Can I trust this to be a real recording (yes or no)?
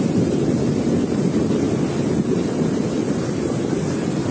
yes